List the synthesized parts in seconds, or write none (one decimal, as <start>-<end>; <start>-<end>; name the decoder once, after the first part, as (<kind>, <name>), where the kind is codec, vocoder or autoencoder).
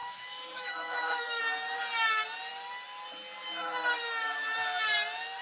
0.0-1.4 (autoencoder, DAC-VAE)